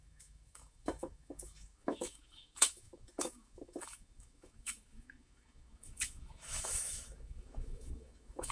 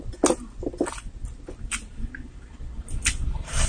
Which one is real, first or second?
second